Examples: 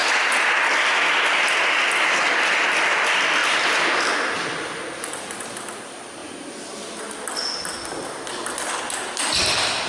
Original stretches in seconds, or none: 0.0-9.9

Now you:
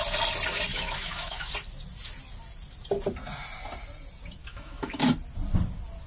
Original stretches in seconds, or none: 0.0-0.7; 1.5-4.4; 5.1-6.1

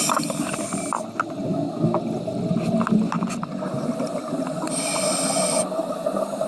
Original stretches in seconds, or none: 0.0-1.5; 2.0-6.5

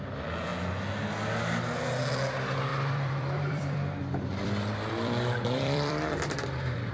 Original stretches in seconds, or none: 0.0-2.7

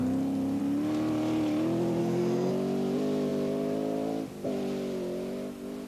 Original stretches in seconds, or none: 0.0-2.0; 2.5-5.9

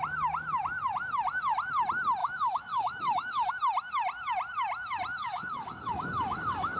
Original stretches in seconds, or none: 0.0-2.2; 3.5-5.2